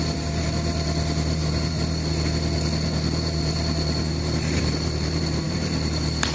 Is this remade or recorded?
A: remade